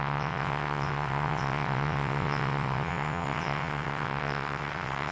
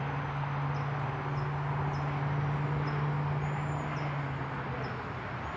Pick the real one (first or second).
second